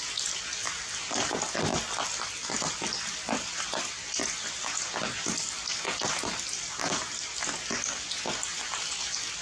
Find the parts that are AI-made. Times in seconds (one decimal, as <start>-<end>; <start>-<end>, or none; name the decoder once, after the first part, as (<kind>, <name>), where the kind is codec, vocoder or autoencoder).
none